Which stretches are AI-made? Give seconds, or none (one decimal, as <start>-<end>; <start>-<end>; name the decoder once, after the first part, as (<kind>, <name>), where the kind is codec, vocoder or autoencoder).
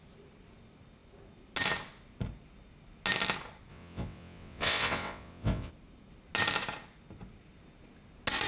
3.7-5.7 (vocoder, WaveNeXt)